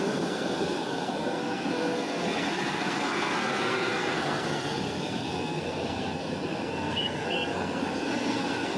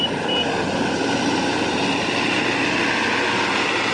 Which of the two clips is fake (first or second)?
first